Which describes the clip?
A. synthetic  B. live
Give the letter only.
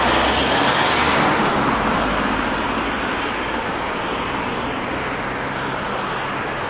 B